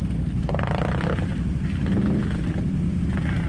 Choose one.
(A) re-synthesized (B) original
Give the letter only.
B